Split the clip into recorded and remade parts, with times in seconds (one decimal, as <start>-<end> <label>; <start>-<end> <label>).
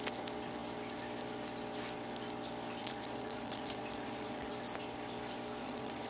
0.0-2.8 recorded; 2.8-4.5 remade; 4.5-5.6 recorded; 5.6-6.1 remade